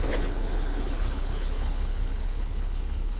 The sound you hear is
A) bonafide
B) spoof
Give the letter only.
B